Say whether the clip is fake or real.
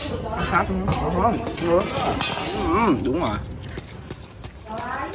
real